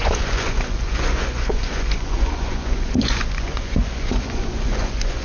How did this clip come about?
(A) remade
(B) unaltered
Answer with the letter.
A